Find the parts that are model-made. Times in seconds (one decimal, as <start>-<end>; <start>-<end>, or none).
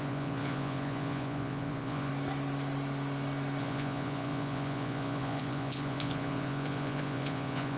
0.0-2.1; 3.6-7.8